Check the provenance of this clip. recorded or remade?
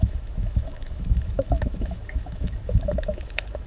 remade